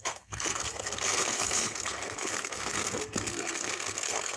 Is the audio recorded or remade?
remade